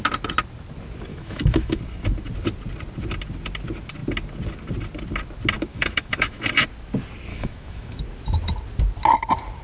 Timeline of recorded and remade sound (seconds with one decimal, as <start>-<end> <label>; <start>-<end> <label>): 0.0-1.1 recorded; 1.1-1.8 remade; 1.8-5.7 recorded; 5.7-6.4 remade; 6.4-7.3 recorded; 7.3-8.0 remade; 8.0-9.6 recorded